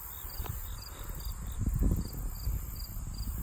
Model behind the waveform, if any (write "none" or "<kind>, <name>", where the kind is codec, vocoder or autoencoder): none